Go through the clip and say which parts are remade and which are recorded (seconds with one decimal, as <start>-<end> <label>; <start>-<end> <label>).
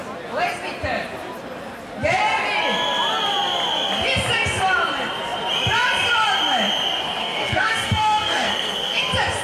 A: 0.0-7.2 recorded; 7.2-9.0 remade; 9.0-9.4 recorded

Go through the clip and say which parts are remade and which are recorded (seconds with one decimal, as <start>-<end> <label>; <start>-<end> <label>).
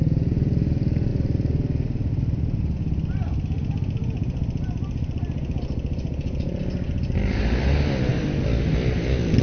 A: 0.0-9.4 recorded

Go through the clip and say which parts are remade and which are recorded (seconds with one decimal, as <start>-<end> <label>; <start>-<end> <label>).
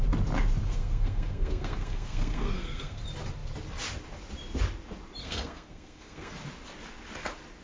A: 0.0-0.6 recorded; 0.6-3.0 remade; 3.0-5.2 recorded; 5.2-6.3 remade; 6.3-7.6 recorded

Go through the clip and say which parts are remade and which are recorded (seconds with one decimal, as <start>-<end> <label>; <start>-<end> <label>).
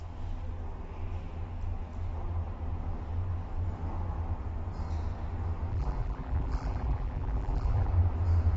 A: 0.0-5.7 recorded; 5.7-7.9 remade; 7.9-8.6 recorded